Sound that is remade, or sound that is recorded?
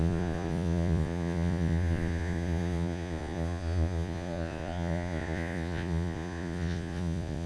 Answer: remade